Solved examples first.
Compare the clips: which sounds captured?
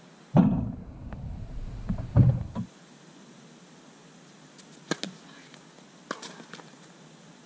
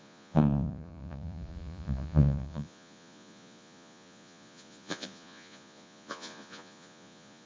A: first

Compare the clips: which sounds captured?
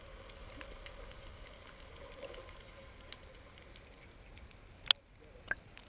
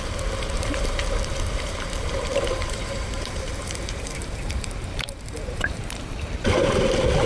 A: first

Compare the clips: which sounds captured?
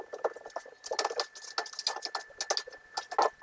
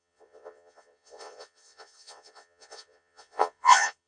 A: first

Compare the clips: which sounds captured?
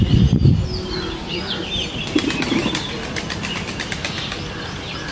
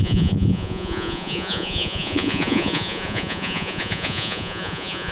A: first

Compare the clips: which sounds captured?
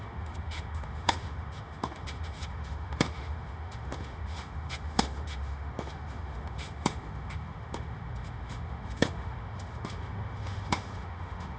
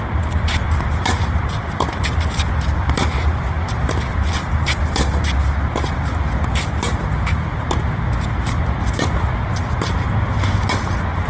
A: second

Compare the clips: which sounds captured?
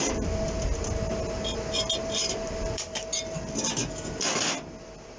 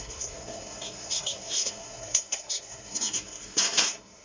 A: first